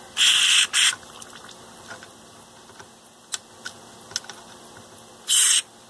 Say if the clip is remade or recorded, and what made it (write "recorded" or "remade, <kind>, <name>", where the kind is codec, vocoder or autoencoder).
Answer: recorded